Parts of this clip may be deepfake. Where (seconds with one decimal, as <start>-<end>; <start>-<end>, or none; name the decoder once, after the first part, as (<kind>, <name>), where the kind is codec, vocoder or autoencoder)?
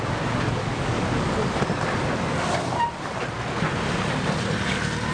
0.6-1.3 (codec, DAC)